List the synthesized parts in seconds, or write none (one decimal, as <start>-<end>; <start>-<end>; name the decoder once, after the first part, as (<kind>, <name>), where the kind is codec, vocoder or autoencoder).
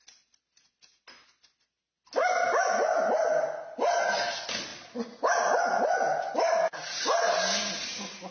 none